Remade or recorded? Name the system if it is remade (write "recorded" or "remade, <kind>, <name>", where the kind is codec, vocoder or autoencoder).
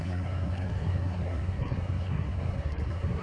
remade, codec, SNAC